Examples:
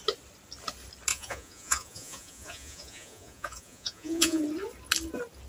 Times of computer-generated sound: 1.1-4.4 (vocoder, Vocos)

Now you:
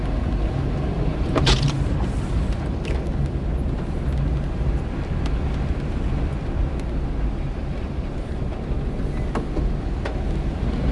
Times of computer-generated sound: 1.1-2.8 (vocoder, BigVGAN v2); 7.6-8.3

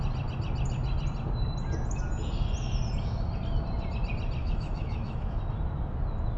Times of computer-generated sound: 4.4-5.4 (autoencoder, DAC-VAE)

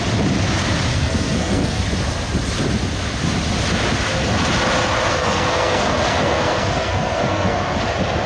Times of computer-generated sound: 0.9-1.8 (codec, SNAC); 5.1-7.8

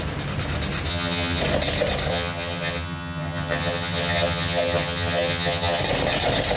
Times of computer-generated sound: 0.9-1.4 (vocoder, HiFi-GAN); 2.1-5.8

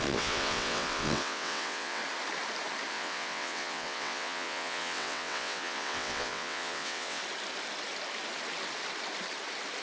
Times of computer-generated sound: 0.0-2.0 (vocoder, WaveNeXt); 2.9-7.2